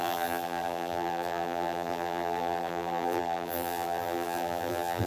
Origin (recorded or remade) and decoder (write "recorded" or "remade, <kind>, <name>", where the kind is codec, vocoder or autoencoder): remade, vocoder, BigVGAN v2